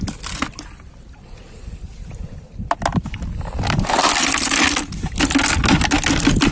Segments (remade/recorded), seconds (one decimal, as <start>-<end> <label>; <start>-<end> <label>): 0.0-6.5 recorded